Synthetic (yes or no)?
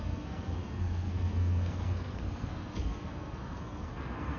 yes